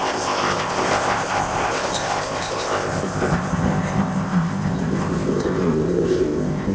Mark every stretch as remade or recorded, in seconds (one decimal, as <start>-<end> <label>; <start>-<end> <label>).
0.0-6.7 remade